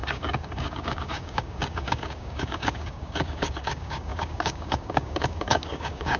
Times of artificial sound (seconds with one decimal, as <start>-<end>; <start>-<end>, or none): 0.0-6.2